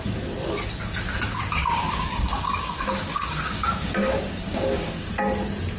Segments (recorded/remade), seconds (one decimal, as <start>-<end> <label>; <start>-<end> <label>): 0.0-1.6 recorded; 1.6-5.1 remade; 5.1-5.8 recorded